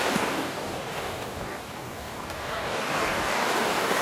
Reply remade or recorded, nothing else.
remade